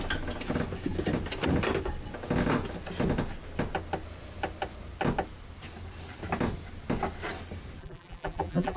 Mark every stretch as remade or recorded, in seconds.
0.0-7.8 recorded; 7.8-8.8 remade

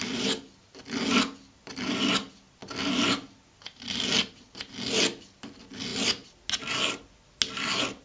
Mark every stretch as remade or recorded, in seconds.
0.0-8.0 recorded

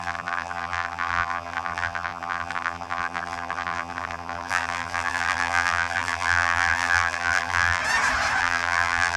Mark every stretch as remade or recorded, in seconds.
0.0-7.8 remade; 7.8-8.4 recorded; 8.4-9.2 remade